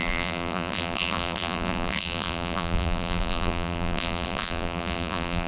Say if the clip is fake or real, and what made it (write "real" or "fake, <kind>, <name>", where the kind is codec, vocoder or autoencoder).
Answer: fake, vocoder, BigVGAN v2